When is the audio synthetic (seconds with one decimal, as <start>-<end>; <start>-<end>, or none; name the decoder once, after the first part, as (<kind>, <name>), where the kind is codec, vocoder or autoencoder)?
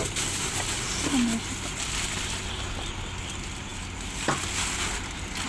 none